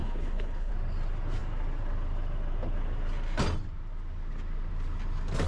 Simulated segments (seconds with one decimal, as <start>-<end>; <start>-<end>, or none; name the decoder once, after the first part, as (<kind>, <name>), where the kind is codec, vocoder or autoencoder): 0.0-0.7 (codec, HILCodec)